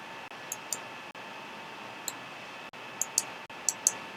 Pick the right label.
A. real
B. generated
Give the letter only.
A